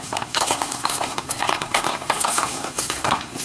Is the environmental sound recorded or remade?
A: remade